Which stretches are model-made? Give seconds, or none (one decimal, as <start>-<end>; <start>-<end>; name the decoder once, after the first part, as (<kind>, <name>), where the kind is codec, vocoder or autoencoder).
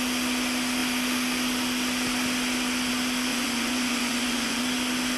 3.3-4.6 (vocoder, Vocos)